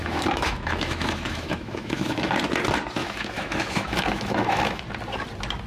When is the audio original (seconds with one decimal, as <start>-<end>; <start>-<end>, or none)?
2.3-3.0; 4.8-5.7